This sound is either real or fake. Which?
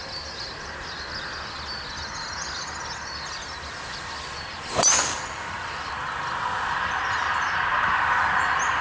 real